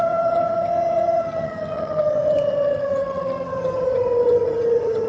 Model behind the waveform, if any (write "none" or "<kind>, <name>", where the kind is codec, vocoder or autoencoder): vocoder, HiFi-GAN